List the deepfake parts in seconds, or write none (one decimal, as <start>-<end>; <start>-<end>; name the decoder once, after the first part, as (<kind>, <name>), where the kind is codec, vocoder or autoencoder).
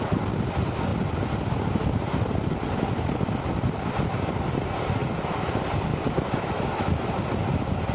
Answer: 5.9-7.2 (autoencoder, DAC-VAE)